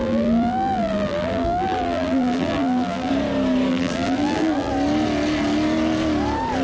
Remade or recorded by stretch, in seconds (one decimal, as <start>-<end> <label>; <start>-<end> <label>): 0.0-3.1 remade; 3.1-3.7 recorded; 3.7-4.7 remade; 4.7-6.6 recorded